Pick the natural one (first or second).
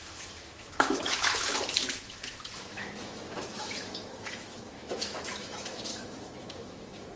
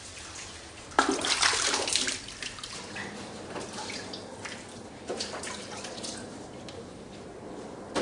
second